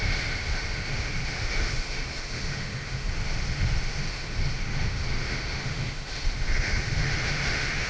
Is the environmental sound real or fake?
fake